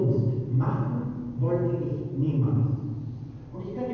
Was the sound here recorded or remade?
recorded